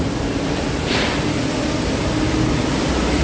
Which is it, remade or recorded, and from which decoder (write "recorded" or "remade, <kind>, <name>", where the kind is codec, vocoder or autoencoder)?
remade, vocoder, BigVGAN v2